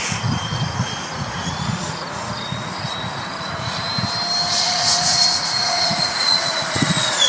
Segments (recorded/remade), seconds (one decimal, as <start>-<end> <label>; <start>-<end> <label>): 0.0-3.9 remade; 3.9-4.5 recorded; 4.5-7.3 remade